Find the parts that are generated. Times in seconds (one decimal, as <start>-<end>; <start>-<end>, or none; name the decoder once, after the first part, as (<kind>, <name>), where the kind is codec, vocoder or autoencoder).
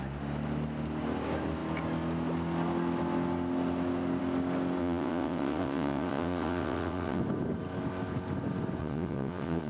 4.8-7.2 (vocoder, WaveNeXt); 8.8-9.7